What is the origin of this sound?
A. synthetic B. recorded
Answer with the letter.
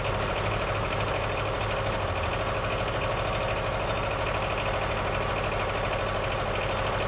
B